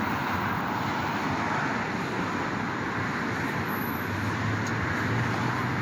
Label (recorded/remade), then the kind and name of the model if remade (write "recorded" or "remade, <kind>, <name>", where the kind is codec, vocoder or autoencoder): recorded